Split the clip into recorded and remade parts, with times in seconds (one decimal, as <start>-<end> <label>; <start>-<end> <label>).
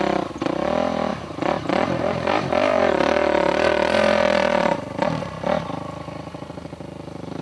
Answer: 0.0-1.1 recorded; 1.1-5.2 remade; 5.2-7.4 recorded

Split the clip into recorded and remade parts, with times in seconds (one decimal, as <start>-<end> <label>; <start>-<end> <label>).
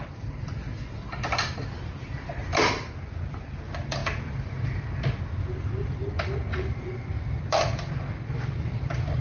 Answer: 0.0-9.2 remade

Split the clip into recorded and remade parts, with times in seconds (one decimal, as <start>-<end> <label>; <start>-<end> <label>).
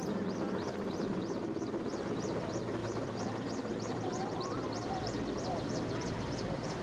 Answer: 0.0-2.8 recorded; 2.8-6.8 remade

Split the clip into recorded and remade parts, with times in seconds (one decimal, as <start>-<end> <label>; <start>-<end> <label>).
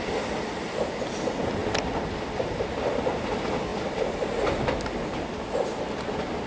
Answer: 0.0-6.5 recorded